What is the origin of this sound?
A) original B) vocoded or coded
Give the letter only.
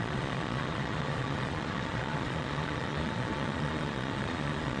B